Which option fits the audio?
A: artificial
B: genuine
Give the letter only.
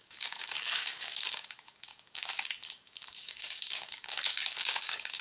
A